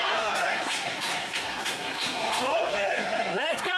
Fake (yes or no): yes